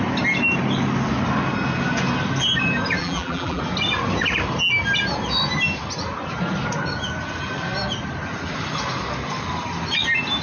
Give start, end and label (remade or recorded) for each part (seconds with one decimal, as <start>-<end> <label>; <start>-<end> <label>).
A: 0.0-3.0 recorded; 3.0-3.6 remade; 3.6-10.4 recorded